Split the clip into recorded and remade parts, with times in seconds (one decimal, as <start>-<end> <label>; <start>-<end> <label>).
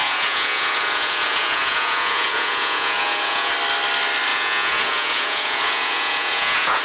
0.0-3.5 remade; 3.5-4.3 recorded; 4.3-6.8 remade